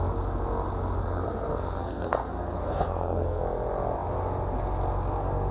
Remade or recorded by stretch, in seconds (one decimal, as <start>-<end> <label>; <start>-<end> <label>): 0.0-1.0 recorded; 1.0-3.4 remade; 3.4-5.5 recorded